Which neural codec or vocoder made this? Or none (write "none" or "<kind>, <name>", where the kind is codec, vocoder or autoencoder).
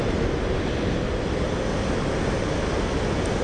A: none